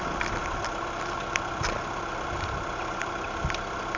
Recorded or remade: recorded